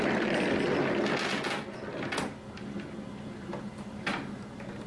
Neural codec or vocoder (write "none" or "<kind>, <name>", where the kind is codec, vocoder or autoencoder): none